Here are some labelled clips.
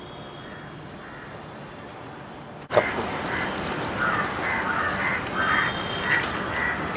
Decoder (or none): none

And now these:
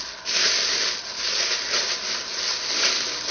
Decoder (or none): none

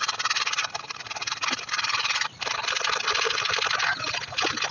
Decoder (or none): none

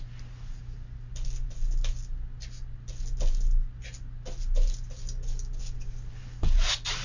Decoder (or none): none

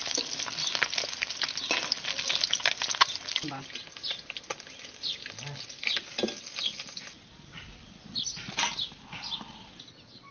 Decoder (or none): none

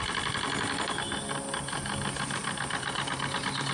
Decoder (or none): none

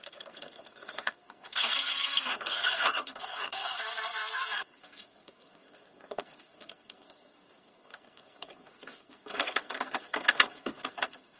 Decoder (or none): codec, SNAC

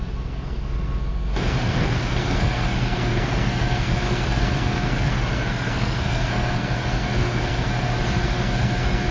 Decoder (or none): codec, SNAC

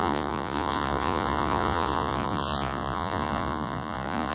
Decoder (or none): vocoder, Vocos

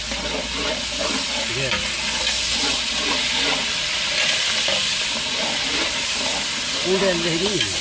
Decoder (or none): none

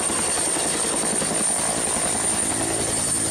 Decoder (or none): none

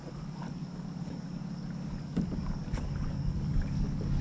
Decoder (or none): codec, DAC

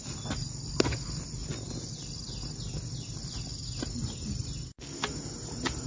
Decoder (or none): none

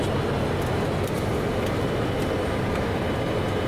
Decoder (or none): none